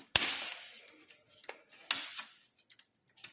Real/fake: real